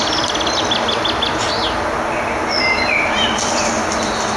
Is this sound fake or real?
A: real